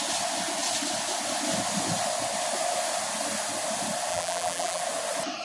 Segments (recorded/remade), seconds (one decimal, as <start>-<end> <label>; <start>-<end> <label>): 0.0-4.1 recorded; 4.1-4.8 remade; 4.8-5.4 recorded